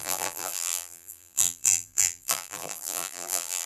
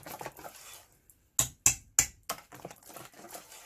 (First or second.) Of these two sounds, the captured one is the second